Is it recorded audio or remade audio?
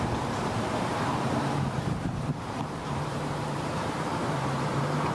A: remade